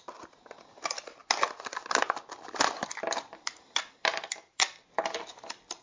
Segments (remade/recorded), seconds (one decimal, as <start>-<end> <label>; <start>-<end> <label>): 0.0-5.8 recorded